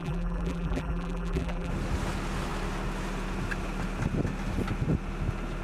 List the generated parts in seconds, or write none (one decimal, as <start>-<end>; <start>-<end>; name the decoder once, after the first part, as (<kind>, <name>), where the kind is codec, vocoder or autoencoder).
0.0-1.7 (vocoder, BigVGAN v2)